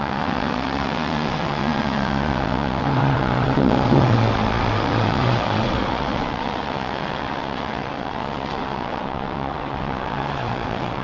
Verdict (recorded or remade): remade